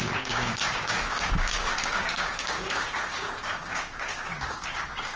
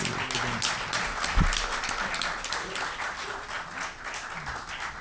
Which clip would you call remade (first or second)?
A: first